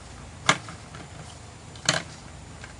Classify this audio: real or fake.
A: real